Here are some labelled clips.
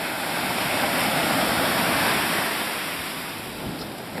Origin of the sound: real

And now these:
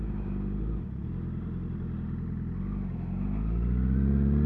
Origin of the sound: real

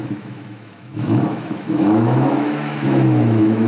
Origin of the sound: fake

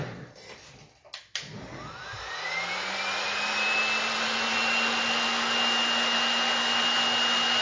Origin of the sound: real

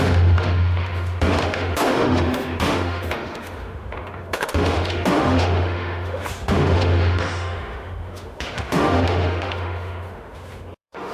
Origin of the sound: fake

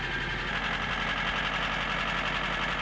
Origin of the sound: real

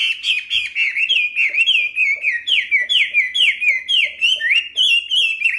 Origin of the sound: real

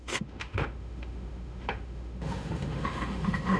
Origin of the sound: fake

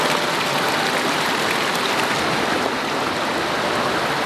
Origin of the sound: real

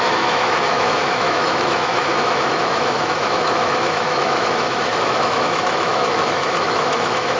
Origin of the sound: fake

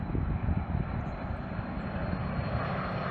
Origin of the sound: real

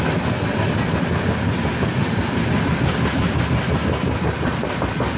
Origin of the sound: real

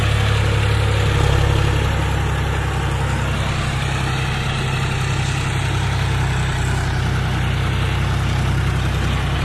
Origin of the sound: real